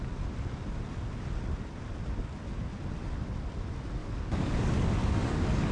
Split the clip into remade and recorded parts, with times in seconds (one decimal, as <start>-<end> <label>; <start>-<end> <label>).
0.0-4.0 recorded; 4.0-5.7 remade